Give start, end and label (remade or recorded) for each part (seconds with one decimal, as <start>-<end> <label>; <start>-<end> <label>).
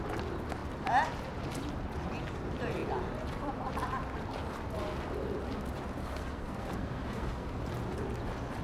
0.0-6.0 recorded; 6.0-7.6 remade; 7.6-8.6 recorded